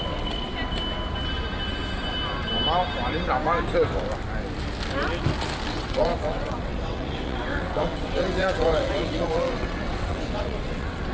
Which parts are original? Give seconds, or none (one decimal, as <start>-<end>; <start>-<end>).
0.5-5.7